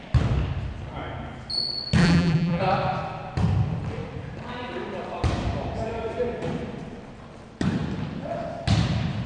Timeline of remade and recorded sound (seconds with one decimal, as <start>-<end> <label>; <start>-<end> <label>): 0.0-2.0 recorded; 2.0-2.6 remade; 2.6-9.3 recorded